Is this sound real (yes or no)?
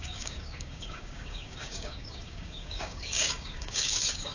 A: no